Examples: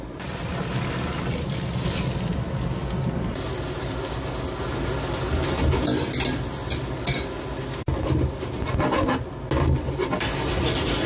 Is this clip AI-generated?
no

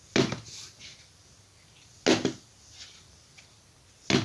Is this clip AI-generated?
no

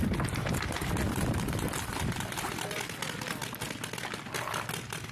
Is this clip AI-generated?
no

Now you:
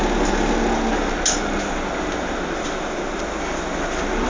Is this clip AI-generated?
no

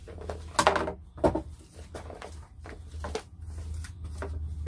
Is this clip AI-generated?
no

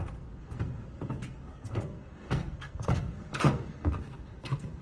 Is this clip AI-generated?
yes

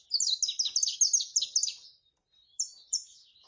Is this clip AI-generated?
no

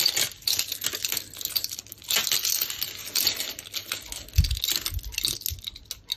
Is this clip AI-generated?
no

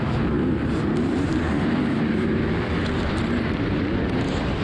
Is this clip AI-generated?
yes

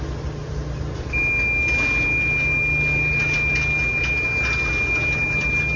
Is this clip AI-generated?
no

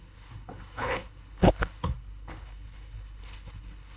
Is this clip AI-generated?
yes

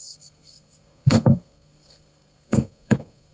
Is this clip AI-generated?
yes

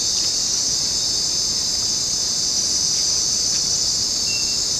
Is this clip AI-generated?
no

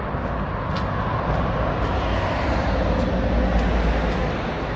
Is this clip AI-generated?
no